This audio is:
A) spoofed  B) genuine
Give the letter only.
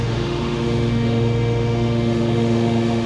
A